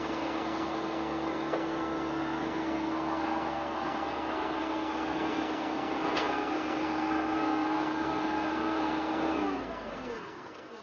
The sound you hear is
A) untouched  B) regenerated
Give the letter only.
B